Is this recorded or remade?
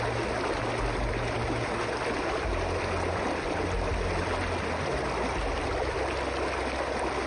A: recorded